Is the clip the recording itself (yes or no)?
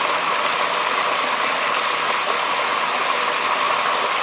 yes